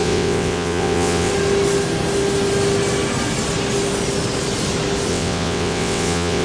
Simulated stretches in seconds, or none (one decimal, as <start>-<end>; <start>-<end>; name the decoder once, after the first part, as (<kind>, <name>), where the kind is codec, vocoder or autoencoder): 0.0-1.3 (vocoder, WaveNeXt); 5.1-6.4